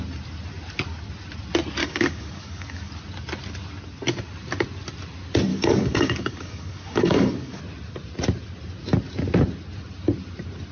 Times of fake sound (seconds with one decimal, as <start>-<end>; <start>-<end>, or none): 1.8-2.9; 5.5-7.6